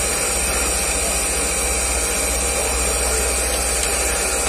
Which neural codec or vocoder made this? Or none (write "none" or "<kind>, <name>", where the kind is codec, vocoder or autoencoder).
none